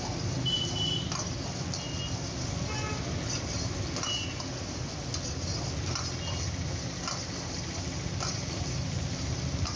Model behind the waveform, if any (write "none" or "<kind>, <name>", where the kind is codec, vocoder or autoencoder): none